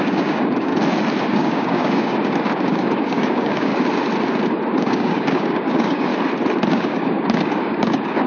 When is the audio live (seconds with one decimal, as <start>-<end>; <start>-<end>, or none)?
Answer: 0.7-1.3; 3.7-4.8; 6.1-6.7